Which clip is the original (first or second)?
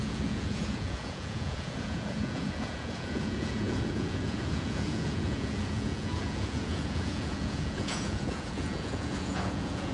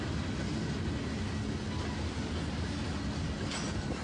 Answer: second